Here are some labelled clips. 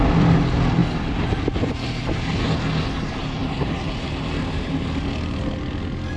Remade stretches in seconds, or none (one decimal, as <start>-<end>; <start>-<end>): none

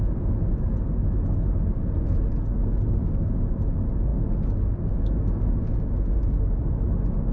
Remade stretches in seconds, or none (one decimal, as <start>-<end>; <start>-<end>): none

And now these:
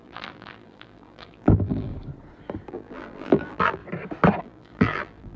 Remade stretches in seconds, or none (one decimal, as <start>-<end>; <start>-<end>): 0.0-1.9; 2.7-3.8; 4.4-5.4

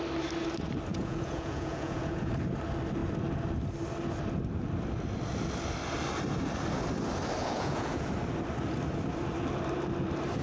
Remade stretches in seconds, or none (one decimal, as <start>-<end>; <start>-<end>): 0.9-2.3; 7.4-8.1

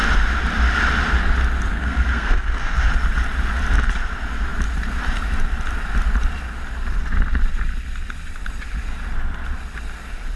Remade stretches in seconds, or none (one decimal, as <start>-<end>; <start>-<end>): 1.7-2.9

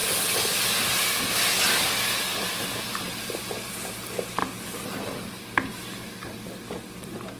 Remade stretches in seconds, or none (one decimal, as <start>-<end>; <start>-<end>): none